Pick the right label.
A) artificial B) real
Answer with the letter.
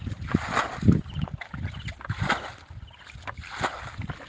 B